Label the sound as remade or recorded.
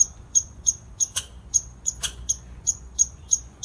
remade